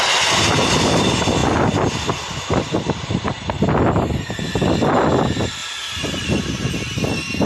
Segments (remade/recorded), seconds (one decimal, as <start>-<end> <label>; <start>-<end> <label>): 0.0-7.5 recorded